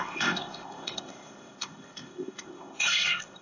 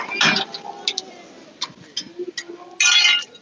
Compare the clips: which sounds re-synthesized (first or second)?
first